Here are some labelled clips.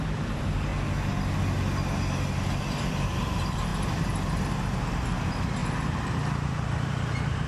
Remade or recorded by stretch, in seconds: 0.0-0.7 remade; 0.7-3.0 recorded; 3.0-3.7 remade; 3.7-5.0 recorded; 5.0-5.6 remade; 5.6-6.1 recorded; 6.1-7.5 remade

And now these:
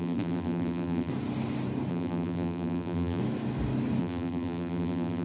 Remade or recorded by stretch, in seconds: 0.0-1.1 remade; 1.1-1.9 recorded; 1.9-3.2 remade; 3.2-4.0 recorded; 4.0-5.2 remade

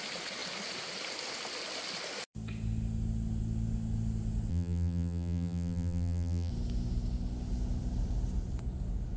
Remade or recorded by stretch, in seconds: 0.0-4.5 recorded; 4.5-6.5 remade; 6.5-9.2 recorded

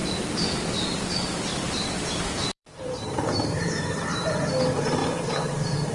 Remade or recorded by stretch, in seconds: 0.0-2.4 recorded; 2.4-4.5 remade; 4.5-5.9 recorded

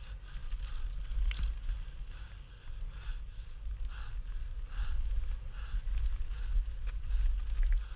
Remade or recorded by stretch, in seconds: 0.0-8.0 recorded

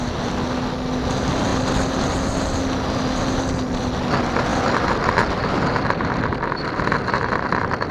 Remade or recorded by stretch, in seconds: 0.0-7.9 recorded

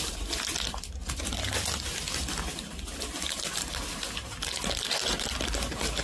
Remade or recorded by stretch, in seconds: 0.0-6.0 recorded